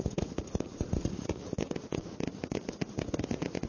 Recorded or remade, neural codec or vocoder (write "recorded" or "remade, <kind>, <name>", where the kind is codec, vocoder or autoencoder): remade, vocoder, Vocos